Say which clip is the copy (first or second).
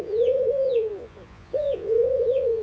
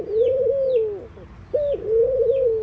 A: first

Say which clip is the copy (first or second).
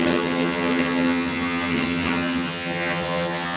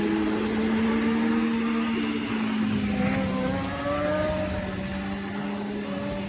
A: first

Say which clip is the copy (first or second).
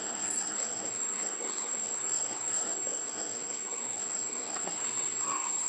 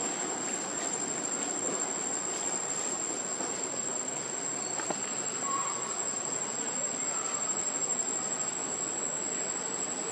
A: first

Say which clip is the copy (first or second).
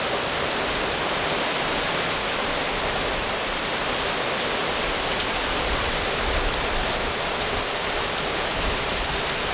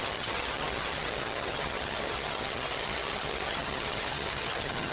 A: second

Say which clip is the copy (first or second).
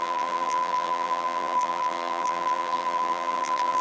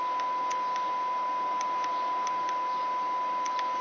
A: first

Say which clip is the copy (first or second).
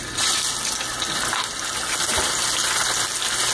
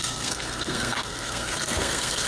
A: second